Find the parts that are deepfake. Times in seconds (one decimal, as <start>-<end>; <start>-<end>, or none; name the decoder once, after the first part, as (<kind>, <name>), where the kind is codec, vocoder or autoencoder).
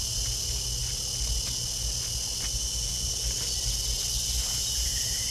none